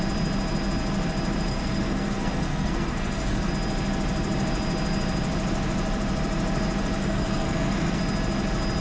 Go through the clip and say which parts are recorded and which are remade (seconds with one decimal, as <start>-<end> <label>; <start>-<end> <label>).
0.0-1.5 recorded; 1.5-3.5 remade; 3.5-7.0 recorded; 7.0-8.0 remade; 8.0-8.8 recorded